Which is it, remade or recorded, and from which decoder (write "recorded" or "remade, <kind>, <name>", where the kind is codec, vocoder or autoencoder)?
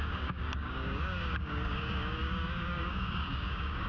remade, codec, DAC